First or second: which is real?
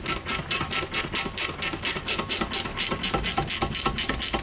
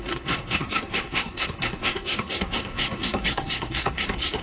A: first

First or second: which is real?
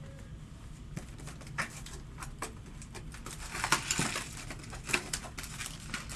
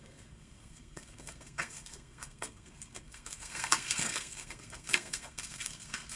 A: first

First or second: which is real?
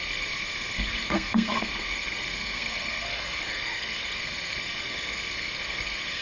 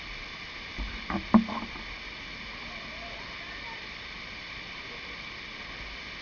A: second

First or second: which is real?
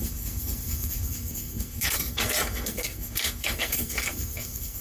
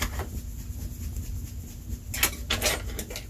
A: second